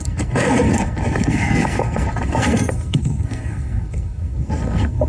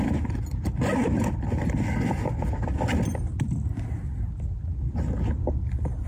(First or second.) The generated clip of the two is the first